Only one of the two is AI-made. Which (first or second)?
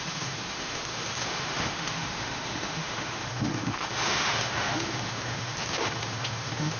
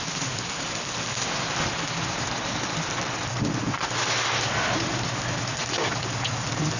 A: first